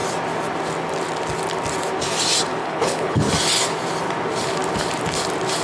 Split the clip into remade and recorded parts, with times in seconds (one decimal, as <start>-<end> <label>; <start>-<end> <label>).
0.0-2.6 recorded; 2.6-3.3 remade; 3.3-5.6 recorded